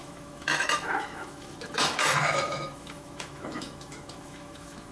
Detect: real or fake fake